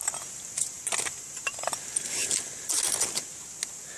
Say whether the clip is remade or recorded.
recorded